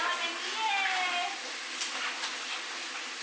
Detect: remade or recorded recorded